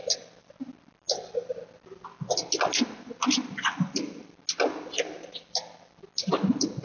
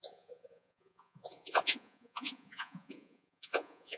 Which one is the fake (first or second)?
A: second